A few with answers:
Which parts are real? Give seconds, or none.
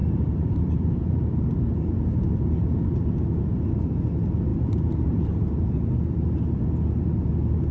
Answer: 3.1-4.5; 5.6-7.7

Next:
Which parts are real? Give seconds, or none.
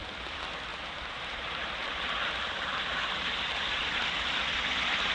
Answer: 0.0-0.7; 3.8-5.1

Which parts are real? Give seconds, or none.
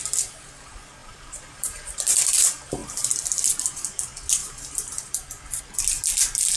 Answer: 0.0-1.0; 2.0-4.4; 5.6-6.6